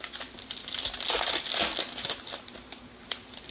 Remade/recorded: recorded